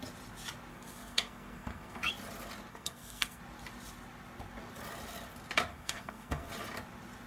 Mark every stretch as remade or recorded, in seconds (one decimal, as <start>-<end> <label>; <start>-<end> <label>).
0.0-0.7 recorded; 0.7-2.1 remade; 2.1-2.7 recorded; 2.7-3.4 remade; 3.4-5.7 recorded; 5.7-6.5 remade; 6.5-7.3 recorded